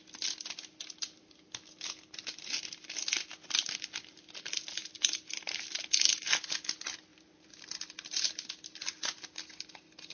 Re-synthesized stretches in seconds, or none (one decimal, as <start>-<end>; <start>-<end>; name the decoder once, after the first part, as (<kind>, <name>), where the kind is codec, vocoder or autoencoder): 4.8-5.8 (vocoder, BigVGAN v2); 7.1-8.3